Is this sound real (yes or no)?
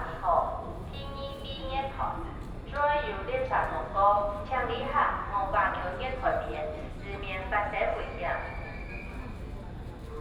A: yes